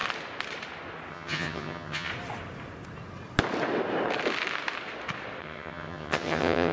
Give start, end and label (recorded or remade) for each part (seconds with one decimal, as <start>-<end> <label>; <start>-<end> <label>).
0.0-1.1 recorded; 1.1-2.1 remade; 2.1-5.4 recorded; 5.4-6.7 remade